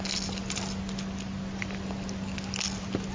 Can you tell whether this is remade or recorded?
recorded